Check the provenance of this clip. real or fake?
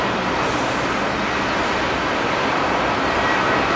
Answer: real